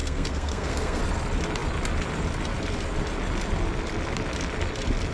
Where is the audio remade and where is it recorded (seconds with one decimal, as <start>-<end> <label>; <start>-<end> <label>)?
0.0-1.0 remade; 1.0-5.1 recorded